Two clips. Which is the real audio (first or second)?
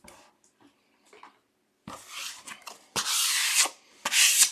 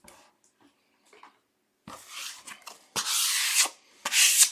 second